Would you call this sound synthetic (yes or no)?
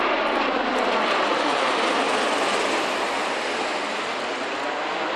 yes